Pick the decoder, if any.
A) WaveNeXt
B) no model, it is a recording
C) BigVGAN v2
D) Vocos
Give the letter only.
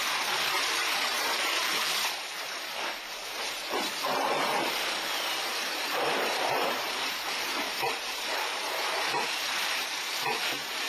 C